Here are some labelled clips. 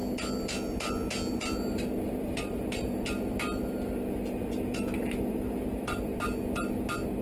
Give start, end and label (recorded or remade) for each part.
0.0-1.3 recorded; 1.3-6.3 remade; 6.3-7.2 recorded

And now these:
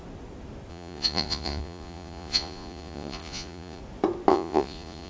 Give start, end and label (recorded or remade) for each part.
0.0-0.7 recorded; 0.7-3.8 remade; 3.8-4.3 recorded; 4.3-5.1 remade